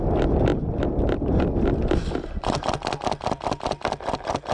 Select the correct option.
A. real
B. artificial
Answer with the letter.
A